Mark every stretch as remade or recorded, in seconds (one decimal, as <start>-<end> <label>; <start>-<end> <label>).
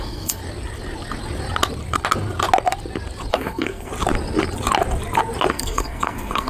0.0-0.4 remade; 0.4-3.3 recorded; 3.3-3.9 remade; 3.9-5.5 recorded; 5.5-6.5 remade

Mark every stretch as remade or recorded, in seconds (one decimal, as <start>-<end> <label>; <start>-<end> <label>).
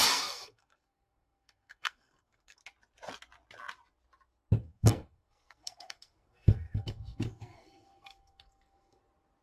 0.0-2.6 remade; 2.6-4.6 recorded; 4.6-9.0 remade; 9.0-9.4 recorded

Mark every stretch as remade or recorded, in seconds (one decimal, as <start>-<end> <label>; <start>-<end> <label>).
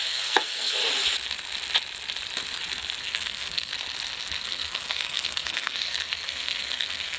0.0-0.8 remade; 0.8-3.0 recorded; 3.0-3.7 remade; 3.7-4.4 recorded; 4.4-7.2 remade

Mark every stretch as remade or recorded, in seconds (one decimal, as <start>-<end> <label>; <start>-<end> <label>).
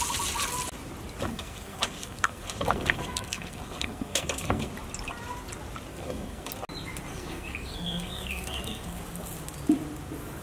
0.0-1.3 recorded; 1.3-4.7 remade; 4.7-5.9 recorded; 5.9-6.5 remade; 6.5-7.1 recorded; 7.1-9.0 remade; 9.0-10.4 recorded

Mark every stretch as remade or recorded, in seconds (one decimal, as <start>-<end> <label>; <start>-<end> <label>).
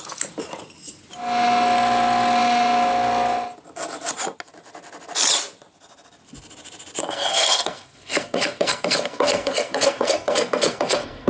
0.0-7.0 recorded; 7.0-11.3 remade